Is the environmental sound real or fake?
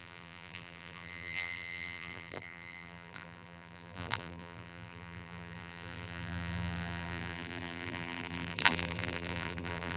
fake